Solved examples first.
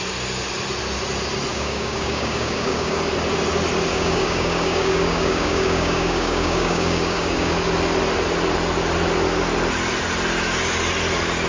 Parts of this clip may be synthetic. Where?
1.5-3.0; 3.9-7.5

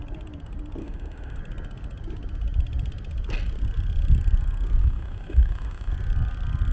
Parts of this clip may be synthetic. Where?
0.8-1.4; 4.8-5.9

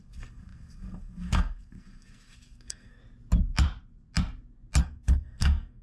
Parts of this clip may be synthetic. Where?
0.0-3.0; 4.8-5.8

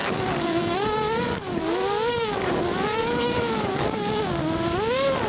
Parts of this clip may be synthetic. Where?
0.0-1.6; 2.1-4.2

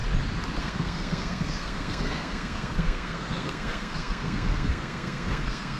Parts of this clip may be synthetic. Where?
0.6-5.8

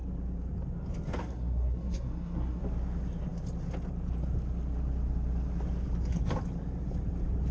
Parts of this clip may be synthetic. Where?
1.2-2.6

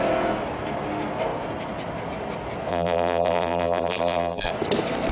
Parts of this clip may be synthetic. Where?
2.7-4.5

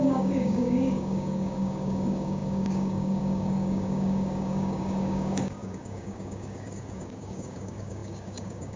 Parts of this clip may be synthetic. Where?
0.0-8.8